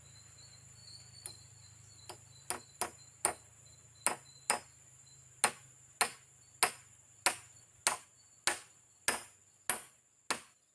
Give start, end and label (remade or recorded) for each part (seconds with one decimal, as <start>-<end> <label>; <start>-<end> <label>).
0.0-10.7 recorded